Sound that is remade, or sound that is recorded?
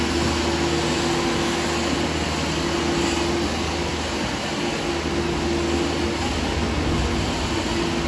recorded